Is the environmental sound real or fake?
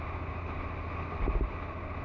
real